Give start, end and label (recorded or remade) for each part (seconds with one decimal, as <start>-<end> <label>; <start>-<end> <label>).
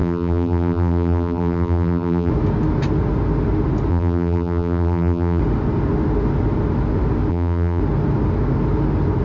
0.0-2.3 remade; 2.3-3.9 recorded; 3.9-5.4 remade; 5.4-7.3 recorded; 7.3-7.8 remade; 7.8-9.2 recorded